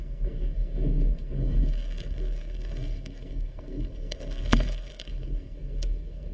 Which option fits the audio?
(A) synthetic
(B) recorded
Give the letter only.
A